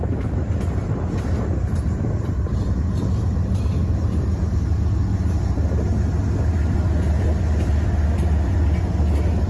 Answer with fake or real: real